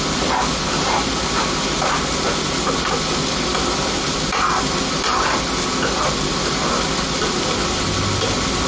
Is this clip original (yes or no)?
yes